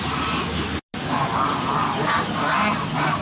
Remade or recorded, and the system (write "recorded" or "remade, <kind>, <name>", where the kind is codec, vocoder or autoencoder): recorded